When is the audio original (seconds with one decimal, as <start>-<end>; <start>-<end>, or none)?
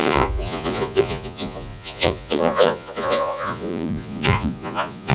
none